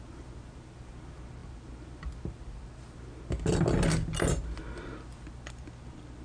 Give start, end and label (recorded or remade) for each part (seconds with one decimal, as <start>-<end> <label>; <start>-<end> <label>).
0.0-6.2 recorded